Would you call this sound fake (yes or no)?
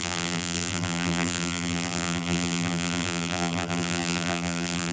yes